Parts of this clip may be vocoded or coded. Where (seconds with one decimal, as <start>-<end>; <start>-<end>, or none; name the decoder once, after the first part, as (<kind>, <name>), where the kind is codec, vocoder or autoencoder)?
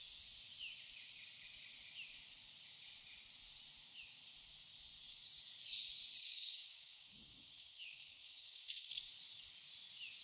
6.2-8.9 (codec, DAC)